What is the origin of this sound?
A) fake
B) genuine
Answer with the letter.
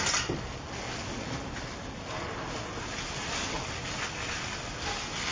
B